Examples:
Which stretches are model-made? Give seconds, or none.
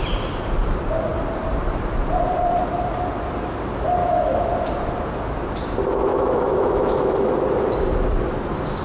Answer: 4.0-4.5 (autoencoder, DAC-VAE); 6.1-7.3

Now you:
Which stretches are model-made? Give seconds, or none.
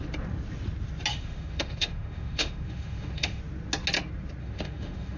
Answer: 1.1-3.4 (autoencoder, DAC-VAE); 4.4-5.2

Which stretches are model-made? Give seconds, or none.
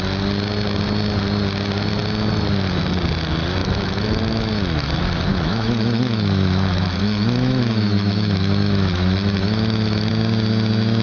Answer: 3.6-4.5 (autoencoder, DAC-VAE); 5.3-10.1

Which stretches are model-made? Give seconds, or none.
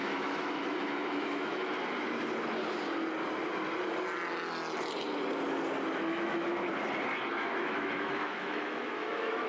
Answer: 0.0-1.7 (autoencoder, DAC-VAE); 6.0-6.7; 7.3-9.5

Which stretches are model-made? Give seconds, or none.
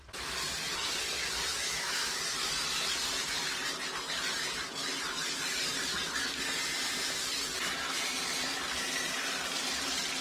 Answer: 1.5-2.2 (autoencoder, DAC-VAE)